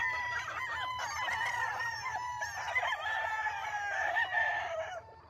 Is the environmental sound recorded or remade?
recorded